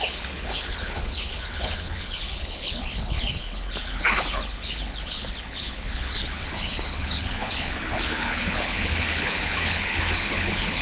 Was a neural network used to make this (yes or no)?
yes